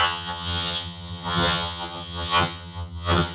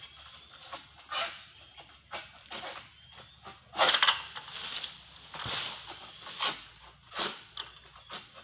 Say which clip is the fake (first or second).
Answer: first